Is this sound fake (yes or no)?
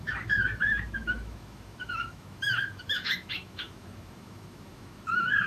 yes